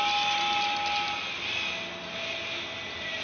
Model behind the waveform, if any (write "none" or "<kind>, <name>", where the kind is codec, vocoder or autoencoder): none